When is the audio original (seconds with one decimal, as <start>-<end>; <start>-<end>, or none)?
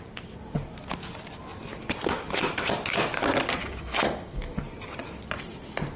0.0-3.6; 4.6-6.0